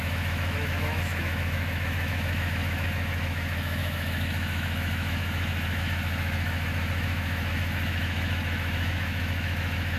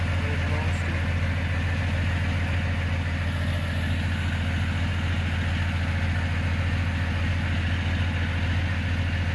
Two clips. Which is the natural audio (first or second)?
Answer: second